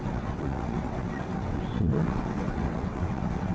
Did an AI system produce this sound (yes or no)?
yes